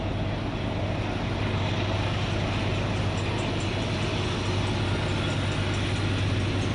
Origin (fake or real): real